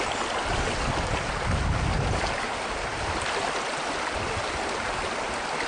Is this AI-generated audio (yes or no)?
no